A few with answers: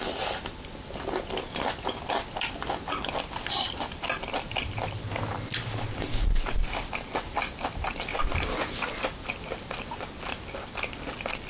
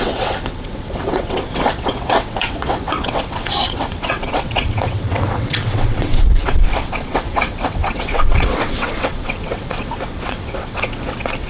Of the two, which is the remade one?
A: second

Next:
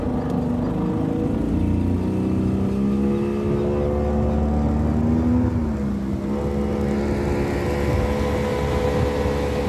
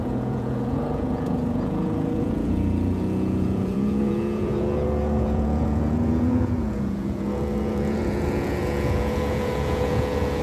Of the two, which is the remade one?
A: second